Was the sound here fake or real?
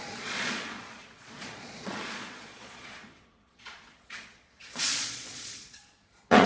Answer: fake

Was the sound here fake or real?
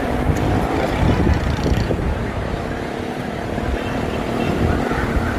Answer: real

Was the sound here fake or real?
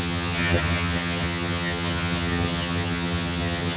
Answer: fake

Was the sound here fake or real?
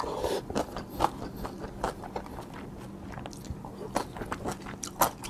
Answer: real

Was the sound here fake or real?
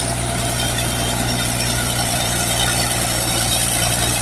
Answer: fake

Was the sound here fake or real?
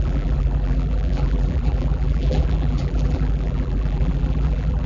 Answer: fake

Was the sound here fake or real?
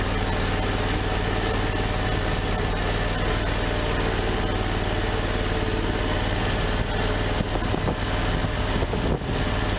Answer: real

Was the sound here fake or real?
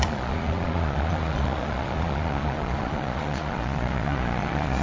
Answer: fake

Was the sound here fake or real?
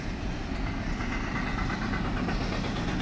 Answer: real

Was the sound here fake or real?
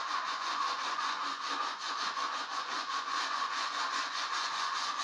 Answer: fake